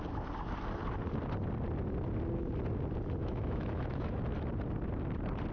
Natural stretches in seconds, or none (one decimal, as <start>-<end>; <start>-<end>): 0.0-3.2; 4.2-5.5